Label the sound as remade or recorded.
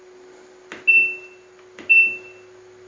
recorded